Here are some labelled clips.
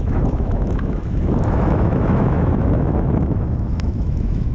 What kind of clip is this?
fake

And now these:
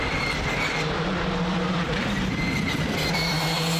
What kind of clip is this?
fake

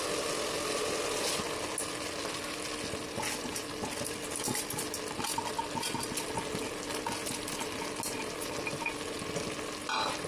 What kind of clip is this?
real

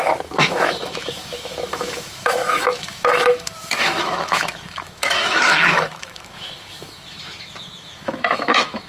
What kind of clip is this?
fake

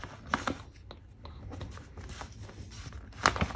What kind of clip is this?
real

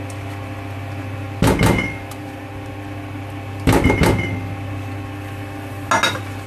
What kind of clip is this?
real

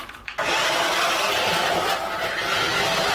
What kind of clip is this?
real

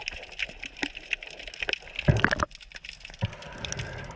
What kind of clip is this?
real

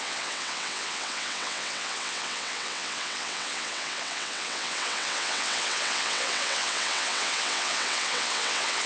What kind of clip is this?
fake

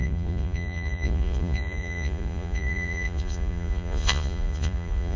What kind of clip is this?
fake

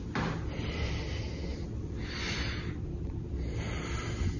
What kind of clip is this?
real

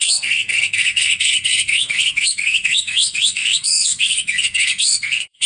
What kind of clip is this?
fake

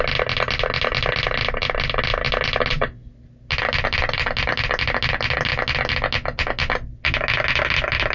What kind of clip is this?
real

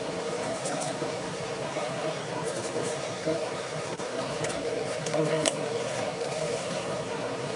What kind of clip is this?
fake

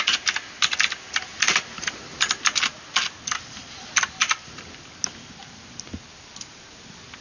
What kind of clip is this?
real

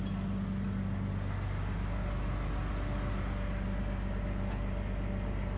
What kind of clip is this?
real